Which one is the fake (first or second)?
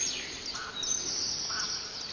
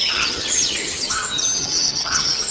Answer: second